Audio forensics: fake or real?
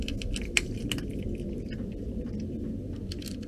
real